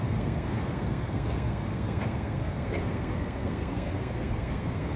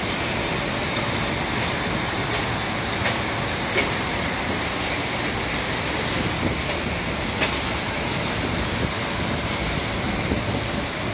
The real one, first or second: second